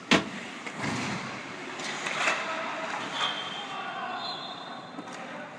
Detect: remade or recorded recorded